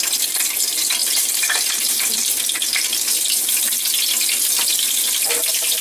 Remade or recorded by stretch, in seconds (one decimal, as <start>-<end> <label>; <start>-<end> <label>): 0.0-1.0 recorded; 1.0-3.5 remade; 3.5-5.8 recorded